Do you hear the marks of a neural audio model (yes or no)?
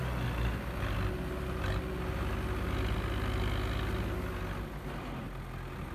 no